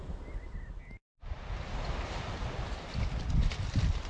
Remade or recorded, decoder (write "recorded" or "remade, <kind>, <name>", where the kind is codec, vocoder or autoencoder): recorded